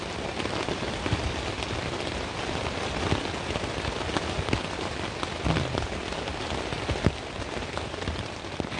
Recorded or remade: recorded